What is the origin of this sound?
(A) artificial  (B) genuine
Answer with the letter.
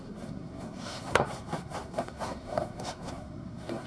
A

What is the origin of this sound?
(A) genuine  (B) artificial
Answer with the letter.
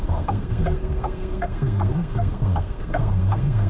B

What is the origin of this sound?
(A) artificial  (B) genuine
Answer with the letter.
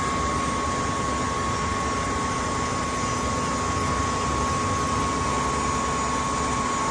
B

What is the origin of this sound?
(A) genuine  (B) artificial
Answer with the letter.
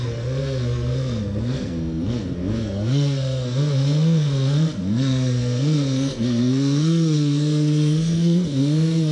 B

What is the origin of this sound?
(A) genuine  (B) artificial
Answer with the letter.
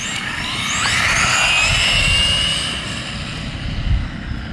A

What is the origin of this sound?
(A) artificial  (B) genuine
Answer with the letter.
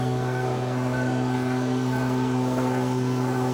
A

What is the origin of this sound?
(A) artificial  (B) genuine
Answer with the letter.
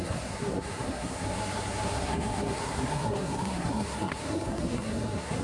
A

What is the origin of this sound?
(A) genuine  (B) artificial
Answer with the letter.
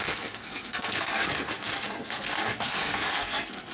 B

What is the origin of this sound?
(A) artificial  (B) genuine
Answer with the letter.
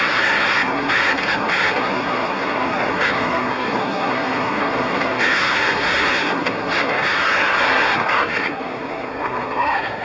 A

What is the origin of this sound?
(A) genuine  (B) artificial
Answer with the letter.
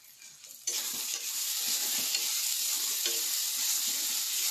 A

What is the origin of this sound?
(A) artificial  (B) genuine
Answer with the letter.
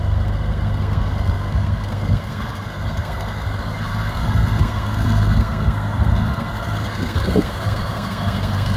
A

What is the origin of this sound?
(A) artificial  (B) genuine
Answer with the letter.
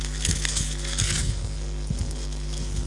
A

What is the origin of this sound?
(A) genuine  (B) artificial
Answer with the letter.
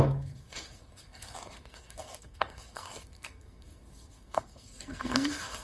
B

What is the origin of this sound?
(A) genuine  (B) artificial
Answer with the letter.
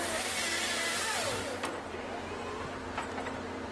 A